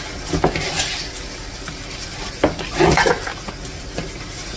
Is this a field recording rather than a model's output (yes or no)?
yes